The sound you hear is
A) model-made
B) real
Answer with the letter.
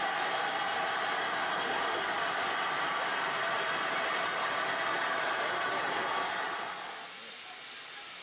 B